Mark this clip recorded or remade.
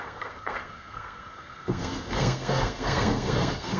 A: remade